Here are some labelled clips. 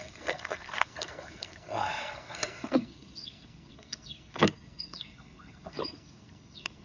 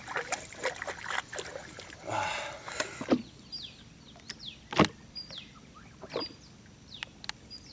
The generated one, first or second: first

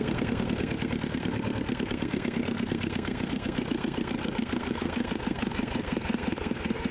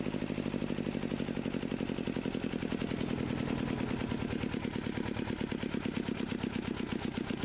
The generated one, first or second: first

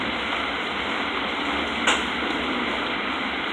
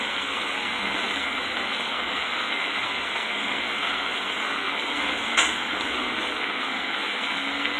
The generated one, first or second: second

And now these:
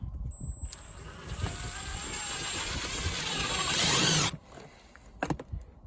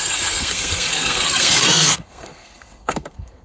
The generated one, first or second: second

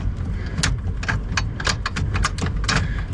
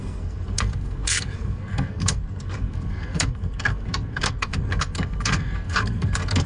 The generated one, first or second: second